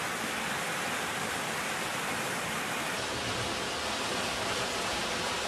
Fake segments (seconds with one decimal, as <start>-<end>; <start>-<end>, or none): none